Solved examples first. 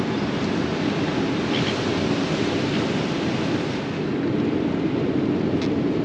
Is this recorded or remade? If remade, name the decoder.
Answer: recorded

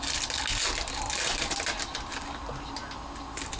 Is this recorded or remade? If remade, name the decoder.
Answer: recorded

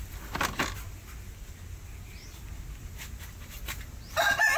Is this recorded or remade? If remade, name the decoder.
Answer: recorded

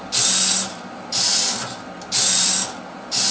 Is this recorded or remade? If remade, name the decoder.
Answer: recorded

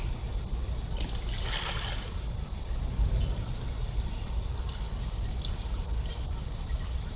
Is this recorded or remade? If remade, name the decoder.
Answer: recorded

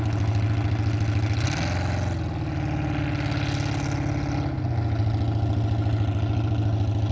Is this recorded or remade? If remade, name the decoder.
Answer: recorded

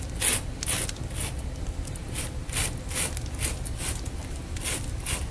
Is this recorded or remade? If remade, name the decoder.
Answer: recorded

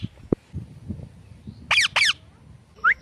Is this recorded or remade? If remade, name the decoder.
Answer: recorded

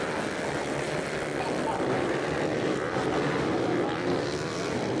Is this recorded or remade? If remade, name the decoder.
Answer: recorded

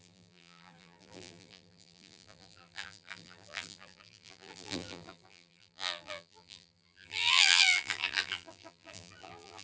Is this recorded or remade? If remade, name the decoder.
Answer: remade, vocoder, BigVGAN v2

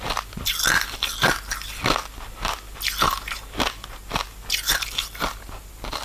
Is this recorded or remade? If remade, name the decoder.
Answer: recorded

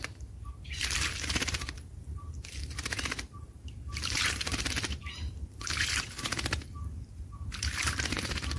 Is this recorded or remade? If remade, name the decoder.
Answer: remade, vocoder, BigVGAN v2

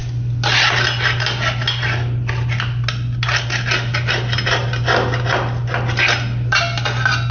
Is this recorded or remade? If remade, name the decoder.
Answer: recorded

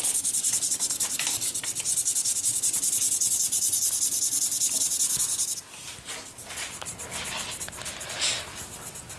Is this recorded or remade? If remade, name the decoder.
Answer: recorded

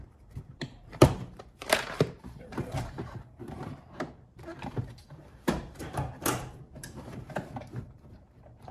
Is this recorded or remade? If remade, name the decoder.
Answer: remade, vocoder, BigVGAN v2